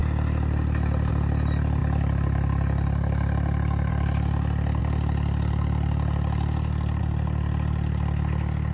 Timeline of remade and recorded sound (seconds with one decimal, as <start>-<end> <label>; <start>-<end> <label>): 0.0-8.7 recorded